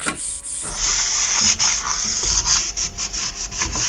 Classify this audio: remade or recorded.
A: recorded